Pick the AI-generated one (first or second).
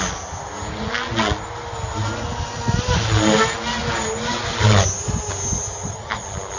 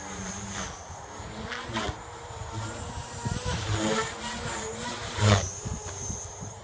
second